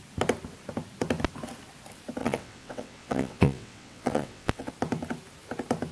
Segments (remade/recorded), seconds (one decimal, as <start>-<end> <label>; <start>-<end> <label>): 0.0-2.2 recorded; 2.2-4.7 remade; 4.7-5.9 recorded